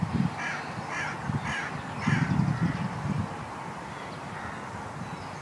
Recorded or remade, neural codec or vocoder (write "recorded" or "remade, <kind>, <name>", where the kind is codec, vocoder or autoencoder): recorded